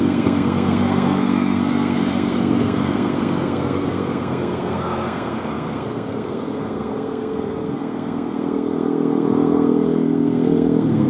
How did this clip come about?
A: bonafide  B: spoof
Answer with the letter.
B